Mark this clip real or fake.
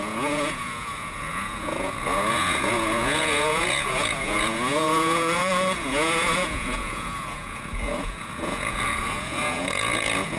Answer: fake